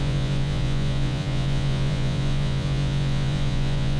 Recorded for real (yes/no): no